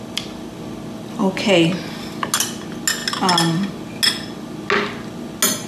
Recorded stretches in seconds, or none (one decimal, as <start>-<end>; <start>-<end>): 0.0-5.7

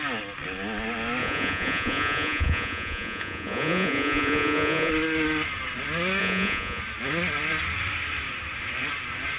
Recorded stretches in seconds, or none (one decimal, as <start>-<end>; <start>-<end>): 0.0-1.2; 4.9-6.2; 6.8-9.4

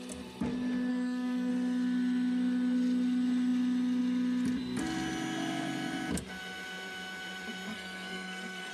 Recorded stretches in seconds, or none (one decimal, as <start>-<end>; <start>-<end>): 0.0-0.9; 1.5-7.7